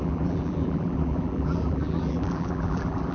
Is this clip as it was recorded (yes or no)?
no